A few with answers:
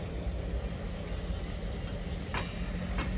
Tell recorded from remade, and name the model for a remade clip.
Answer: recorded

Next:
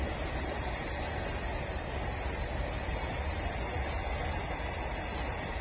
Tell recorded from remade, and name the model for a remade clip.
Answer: recorded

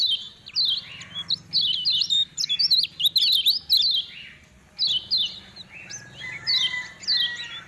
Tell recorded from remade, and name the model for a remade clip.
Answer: recorded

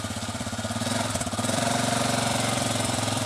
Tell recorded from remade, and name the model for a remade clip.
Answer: remade, vocoder, BigVGAN v2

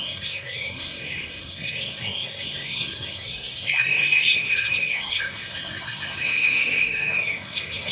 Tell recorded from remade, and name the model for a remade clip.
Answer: remade, codec, SNAC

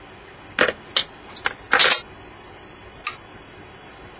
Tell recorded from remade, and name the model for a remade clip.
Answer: recorded